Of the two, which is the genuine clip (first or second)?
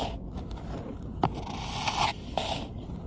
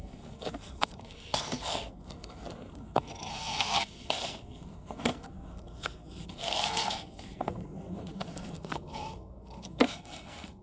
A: first